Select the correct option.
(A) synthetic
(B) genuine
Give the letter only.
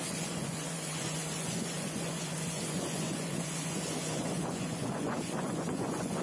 A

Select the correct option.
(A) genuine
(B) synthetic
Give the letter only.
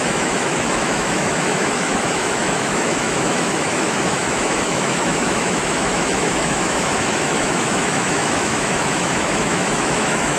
B